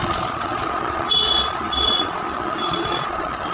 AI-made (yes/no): yes